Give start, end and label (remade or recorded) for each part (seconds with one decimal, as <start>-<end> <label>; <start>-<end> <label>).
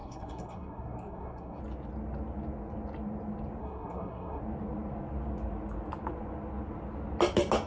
0.0-1.6 remade; 1.6-3.6 recorded; 3.6-4.4 remade; 4.4-7.7 recorded